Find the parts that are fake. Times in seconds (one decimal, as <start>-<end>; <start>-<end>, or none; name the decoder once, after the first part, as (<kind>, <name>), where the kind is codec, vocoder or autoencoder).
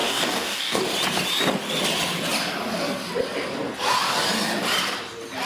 0.0-0.8 (codec, DAC)